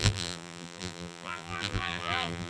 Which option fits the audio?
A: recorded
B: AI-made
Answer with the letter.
B